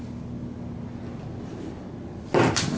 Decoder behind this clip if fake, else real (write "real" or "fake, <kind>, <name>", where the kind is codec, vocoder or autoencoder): real